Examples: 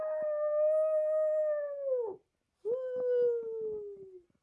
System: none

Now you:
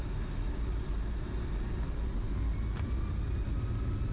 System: none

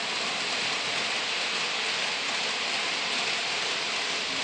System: vocoder, BigVGAN v2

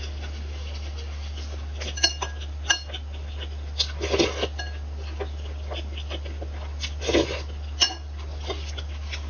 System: none